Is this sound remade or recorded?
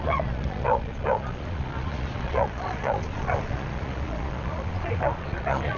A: remade